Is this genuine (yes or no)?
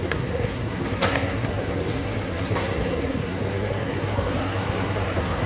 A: no